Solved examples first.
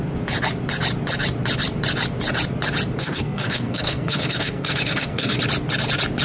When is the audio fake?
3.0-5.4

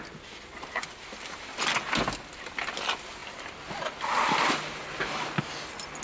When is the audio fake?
none

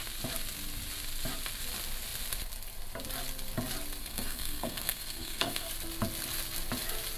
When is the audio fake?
4.0-5.7

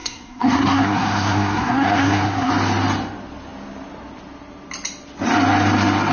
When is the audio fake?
0.0-2.5

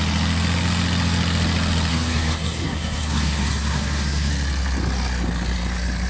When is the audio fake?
1.9-4.3

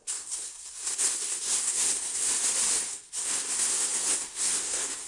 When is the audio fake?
0.0-2.3; 2.8-5.1